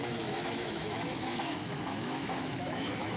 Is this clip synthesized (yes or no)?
yes